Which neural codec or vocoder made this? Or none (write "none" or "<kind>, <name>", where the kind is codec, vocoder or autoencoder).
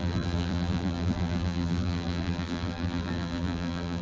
vocoder, BigVGAN v2